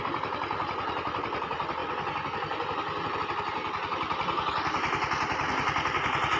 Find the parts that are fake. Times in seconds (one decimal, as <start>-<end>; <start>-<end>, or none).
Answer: 0.0-1.8; 3.2-6.4